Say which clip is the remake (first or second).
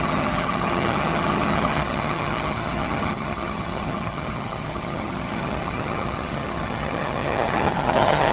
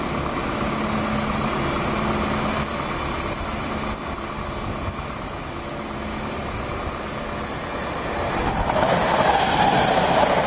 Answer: first